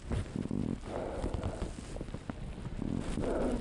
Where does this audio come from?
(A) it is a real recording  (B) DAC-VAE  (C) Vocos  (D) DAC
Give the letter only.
A